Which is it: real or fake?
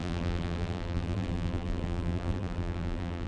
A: fake